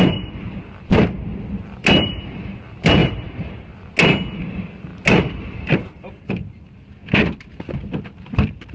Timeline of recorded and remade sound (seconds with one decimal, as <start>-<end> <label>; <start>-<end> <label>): 0.0-3.0 remade; 3.0-4.5 recorded; 4.5-4.9 remade; 4.9-5.4 recorded; 5.4-7.0 remade; 7.0-8.0 recorded; 8.0-8.7 remade